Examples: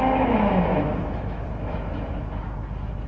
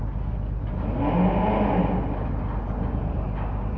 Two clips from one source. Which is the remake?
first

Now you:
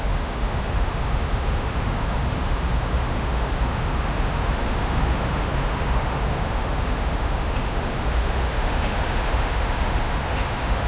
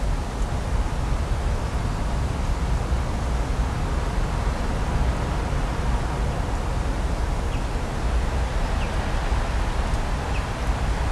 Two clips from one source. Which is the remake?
first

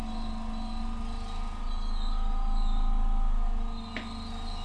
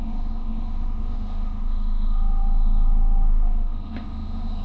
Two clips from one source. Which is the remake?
second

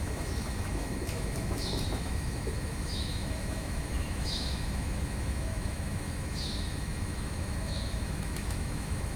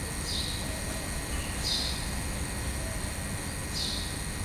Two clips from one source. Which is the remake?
first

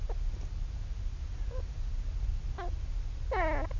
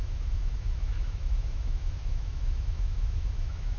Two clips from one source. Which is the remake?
second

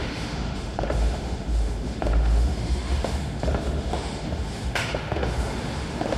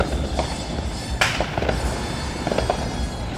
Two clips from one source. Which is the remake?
first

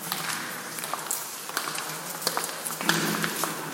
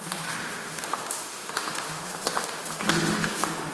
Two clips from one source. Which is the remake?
second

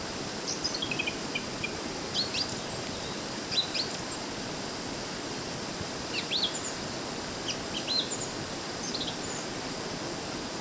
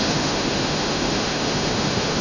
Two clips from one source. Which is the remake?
second